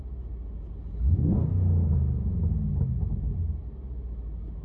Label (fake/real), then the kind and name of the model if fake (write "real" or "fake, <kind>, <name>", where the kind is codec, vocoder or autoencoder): real